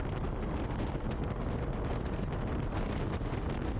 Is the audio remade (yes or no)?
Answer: no